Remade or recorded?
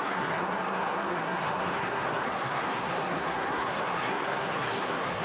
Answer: remade